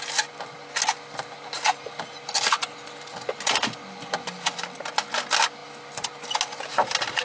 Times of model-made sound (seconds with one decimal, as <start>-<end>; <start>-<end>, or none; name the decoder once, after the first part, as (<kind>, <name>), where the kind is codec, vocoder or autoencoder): none